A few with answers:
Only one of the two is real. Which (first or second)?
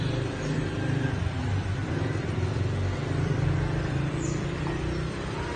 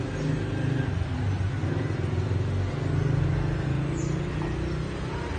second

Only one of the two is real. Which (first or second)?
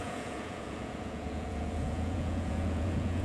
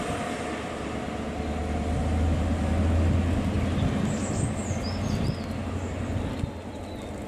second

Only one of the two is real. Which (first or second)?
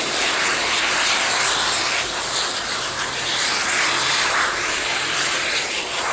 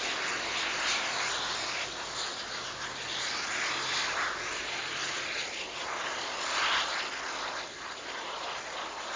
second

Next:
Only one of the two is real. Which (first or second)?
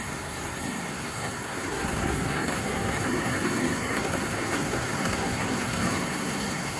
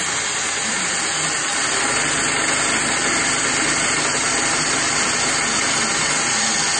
second